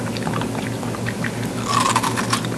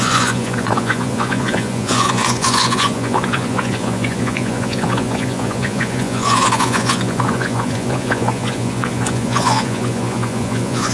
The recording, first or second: first